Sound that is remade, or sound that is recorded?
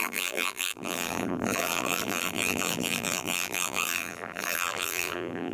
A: remade